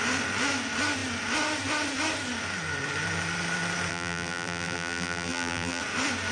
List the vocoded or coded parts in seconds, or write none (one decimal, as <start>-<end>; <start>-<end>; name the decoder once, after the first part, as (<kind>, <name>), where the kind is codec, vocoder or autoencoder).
3.9-5.8 (vocoder, BigVGAN v2)